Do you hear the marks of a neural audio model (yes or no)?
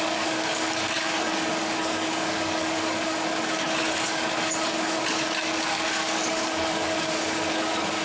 yes